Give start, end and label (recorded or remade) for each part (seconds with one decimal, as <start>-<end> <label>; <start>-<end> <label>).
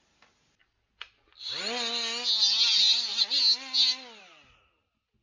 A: 0.0-5.2 recorded